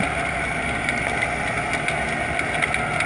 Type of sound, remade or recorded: recorded